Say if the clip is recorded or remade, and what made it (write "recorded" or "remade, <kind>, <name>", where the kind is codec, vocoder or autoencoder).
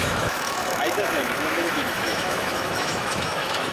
remade, autoencoder, DAC-VAE